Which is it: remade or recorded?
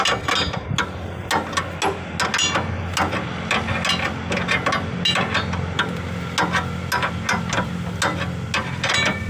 recorded